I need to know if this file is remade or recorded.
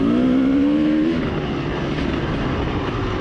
recorded